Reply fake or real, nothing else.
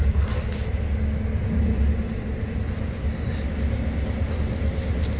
real